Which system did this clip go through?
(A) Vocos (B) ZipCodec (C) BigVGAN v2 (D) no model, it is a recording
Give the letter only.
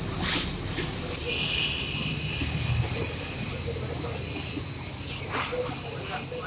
D